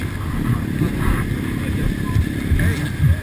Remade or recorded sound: recorded